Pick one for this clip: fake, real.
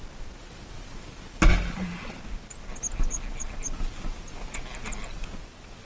real